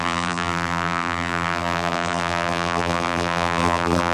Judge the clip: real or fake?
fake